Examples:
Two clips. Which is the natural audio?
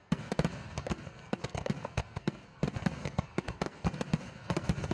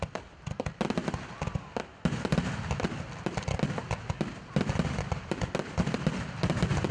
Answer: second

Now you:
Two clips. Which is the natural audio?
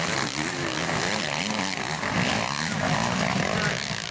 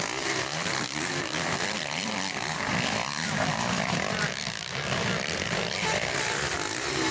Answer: first